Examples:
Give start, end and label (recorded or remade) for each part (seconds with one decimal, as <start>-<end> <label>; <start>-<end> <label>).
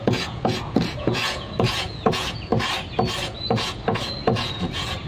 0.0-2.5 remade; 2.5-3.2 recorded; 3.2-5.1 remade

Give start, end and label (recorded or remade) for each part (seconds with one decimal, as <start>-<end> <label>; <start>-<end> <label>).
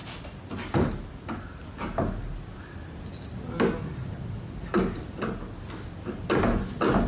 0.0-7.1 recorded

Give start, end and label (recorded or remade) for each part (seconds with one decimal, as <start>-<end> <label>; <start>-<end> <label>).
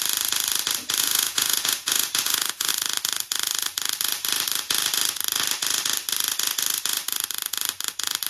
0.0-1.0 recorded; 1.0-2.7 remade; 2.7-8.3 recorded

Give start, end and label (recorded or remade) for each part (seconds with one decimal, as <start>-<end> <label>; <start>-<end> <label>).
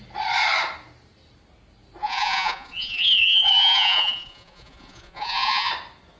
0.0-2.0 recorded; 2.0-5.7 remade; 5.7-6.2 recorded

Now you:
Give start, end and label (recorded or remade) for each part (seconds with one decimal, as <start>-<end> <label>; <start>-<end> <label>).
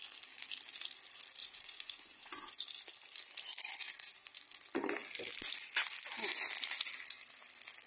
0.0-1.4 recorded; 1.4-2.5 remade; 2.5-7.9 recorded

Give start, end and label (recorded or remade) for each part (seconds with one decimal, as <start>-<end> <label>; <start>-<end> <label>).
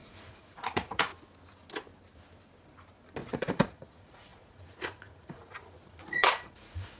0.0-1.1 remade; 1.1-3.3 recorded; 3.3-7.0 remade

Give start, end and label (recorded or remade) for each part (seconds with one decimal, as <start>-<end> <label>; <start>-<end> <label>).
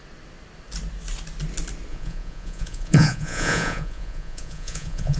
0.0-1.9 recorded; 1.9-5.2 remade